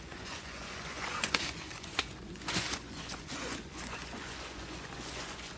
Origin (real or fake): fake